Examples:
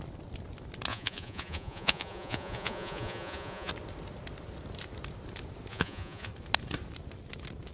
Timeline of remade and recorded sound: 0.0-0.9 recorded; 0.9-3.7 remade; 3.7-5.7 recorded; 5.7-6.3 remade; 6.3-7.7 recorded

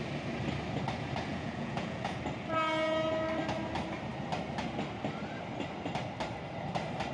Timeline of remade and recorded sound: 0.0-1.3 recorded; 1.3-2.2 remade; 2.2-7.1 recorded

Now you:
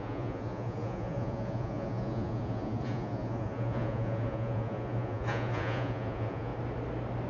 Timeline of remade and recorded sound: 0.0-6.5 remade; 6.5-7.3 recorded